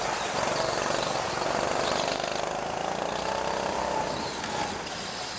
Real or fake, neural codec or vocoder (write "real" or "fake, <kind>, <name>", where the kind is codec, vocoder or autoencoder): real